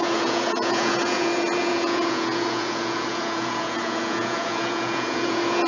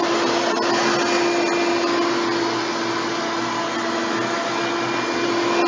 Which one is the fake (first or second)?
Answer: first